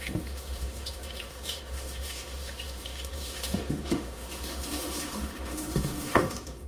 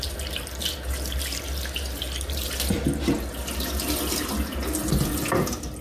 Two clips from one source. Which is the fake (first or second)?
first